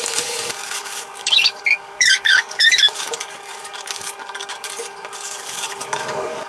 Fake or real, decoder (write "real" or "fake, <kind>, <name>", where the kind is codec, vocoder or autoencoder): fake, codec, DAC